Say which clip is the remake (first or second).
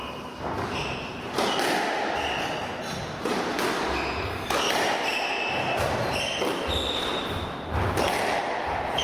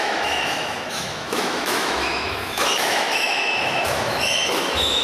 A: second